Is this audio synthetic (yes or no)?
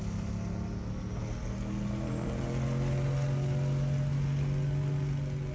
no